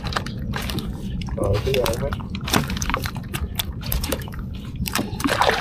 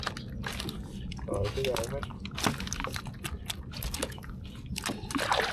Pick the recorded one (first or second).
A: second